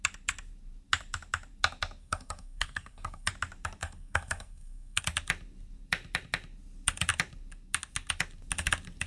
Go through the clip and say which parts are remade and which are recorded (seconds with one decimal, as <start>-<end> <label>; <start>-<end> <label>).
0.0-2.0 recorded; 2.0-3.3 remade; 3.3-3.8 recorded; 3.8-5.0 remade; 5.0-9.1 recorded